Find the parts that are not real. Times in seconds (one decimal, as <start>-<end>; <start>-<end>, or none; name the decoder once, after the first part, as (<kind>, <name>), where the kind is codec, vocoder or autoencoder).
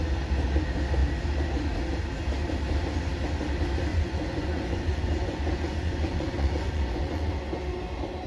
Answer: 3.9-7.3 (vocoder, Vocos)